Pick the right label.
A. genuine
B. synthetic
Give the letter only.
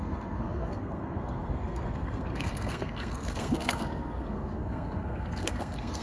B